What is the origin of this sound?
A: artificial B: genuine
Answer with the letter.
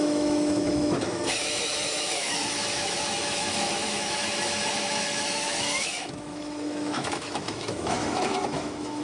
A